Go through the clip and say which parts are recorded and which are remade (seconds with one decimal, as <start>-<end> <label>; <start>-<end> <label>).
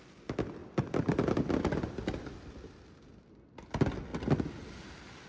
0.0-0.6 recorded; 0.6-3.2 remade; 3.2-5.3 recorded